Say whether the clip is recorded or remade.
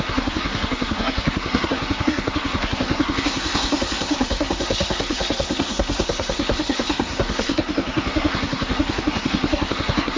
remade